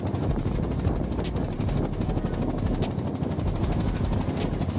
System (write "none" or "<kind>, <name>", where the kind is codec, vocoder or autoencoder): none